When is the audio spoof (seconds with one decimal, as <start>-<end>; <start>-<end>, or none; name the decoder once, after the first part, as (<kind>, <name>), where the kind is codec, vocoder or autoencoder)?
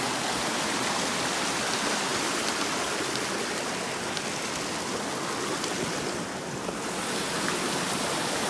none